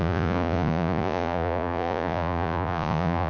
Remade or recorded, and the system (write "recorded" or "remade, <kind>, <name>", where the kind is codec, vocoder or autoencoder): remade, vocoder, Vocos